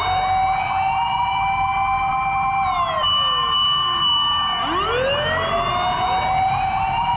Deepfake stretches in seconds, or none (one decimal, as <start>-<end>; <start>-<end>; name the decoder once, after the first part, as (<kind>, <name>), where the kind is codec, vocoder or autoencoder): none